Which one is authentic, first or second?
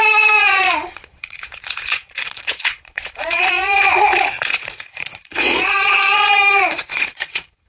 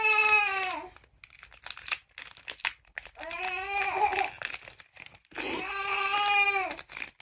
second